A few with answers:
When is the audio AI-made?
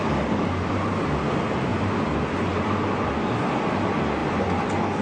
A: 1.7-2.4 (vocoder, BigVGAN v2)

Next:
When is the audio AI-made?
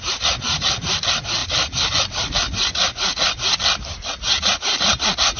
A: 1.4-1.9 (vocoder, BigVGAN v2)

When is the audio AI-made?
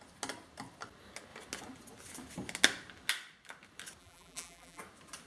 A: 4.0-4.8 (vocoder, BigVGAN v2)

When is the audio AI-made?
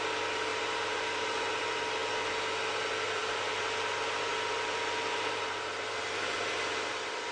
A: 0.5-1.6 (vocoder, BigVGAN v2); 3.2-6.0